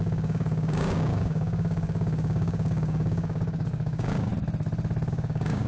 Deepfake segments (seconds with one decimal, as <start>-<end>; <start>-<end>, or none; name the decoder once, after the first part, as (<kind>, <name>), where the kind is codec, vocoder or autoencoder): 0.0-4.3 (codec, DAC); 5.1-5.7